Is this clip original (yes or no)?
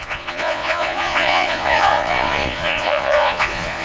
no